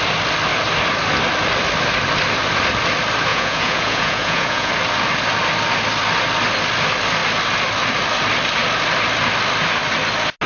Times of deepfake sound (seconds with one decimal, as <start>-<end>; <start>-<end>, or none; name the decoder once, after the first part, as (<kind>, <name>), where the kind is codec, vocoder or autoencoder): 3.3-4.7 (vocoder, Vocos)